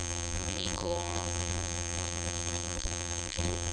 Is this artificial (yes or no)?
yes